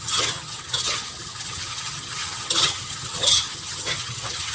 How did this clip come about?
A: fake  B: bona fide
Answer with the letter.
A